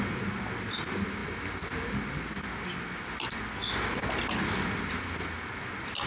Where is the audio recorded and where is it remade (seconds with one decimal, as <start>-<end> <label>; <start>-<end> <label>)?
0.0-6.1 recorded